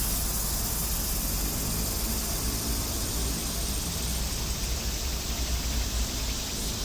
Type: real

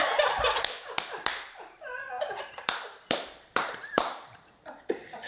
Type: fake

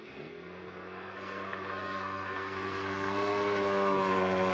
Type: fake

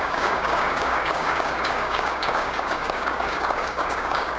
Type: fake